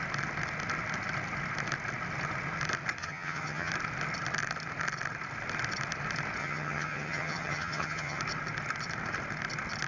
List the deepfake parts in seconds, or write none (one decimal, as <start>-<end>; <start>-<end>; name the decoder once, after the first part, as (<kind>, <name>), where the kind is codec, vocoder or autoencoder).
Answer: 3.0-3.7 (vocoder, HiFi-GAN); 6.4-8.2